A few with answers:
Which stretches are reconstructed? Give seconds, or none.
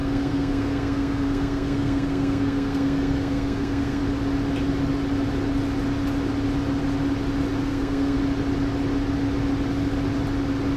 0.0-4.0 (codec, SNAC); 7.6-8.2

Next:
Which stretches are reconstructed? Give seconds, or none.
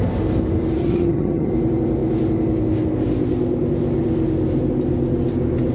0.8-1.5 (vocoder, HiFi-GAN)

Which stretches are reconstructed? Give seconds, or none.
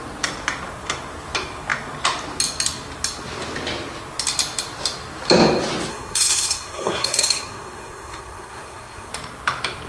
5.9-9.1 (codec, SNAC)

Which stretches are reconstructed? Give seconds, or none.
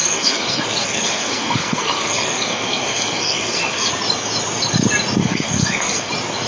0.0-3.9 (codec, SNAC); 5.2-6.1